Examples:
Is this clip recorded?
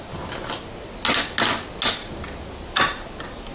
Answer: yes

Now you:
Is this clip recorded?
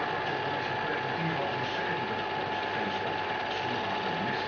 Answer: yes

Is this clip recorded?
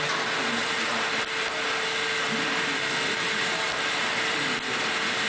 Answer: yes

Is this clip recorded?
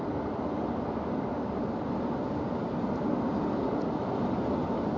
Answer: yes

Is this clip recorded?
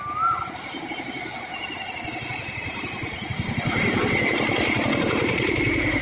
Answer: yes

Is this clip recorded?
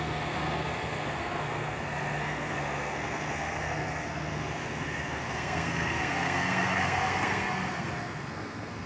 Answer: no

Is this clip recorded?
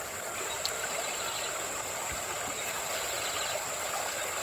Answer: yes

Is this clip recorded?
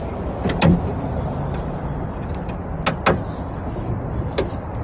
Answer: yes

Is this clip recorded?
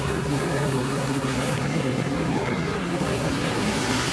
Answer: no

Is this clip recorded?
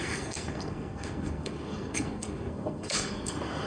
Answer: no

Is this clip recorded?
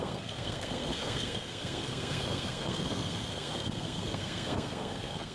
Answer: no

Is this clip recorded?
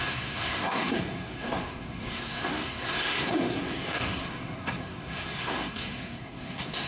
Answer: no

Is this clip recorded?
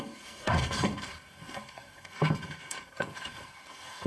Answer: no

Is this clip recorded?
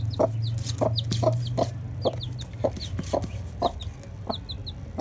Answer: yes